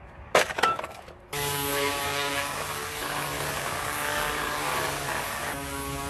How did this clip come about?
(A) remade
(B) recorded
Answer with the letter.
A